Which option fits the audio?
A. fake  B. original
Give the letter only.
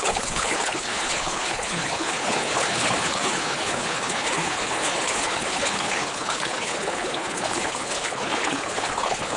A